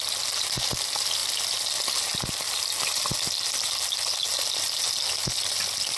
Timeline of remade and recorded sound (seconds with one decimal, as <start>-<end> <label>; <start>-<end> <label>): 0.0-6.0 recorded